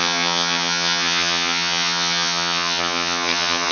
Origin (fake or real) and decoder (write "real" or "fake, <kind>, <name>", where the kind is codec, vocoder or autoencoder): fake, vocoder, HiFi-GAN